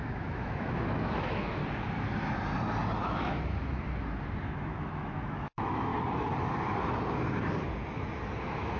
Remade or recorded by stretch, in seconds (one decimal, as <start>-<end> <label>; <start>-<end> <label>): 0.0-1.6 remade; 1.6-3.0 recorded; 3.0-3.6 remade; 3.6-4.6 recorded; 4.6-5.9 remade; 5.9-8.4 recorded; 8.4-8.8 remade